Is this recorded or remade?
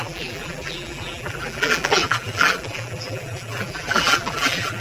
remade